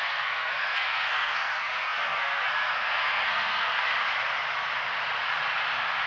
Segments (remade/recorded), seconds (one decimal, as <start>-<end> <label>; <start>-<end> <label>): 0.0-3.9 remade; 3.9-6.1 recorded